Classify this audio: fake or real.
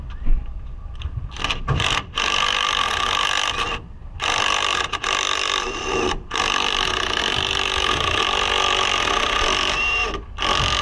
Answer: fake